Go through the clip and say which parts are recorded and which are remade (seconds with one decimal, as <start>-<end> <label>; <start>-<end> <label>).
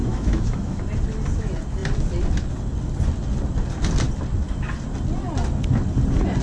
0.0-0.8 remade; 0.8-6.4 recorded